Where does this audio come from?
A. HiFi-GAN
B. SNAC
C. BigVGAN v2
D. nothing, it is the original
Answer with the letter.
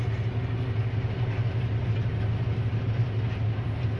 D